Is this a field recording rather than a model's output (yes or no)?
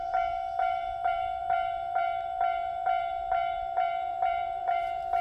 no